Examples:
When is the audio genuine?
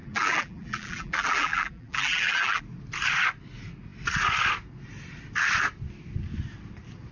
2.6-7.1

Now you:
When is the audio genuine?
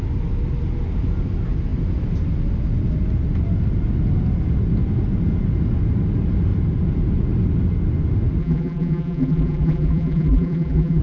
0.0-8.4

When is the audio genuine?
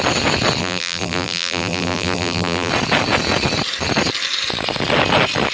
0.0-0.6; 2.7-5.5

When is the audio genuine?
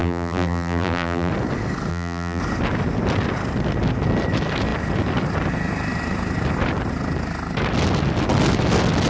1.3-1.9; 2.4-9.1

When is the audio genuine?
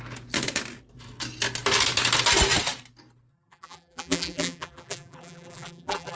0.0-3.3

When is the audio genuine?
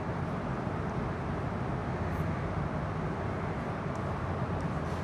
0.0-5.0